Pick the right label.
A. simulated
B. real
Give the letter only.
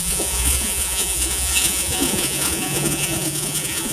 A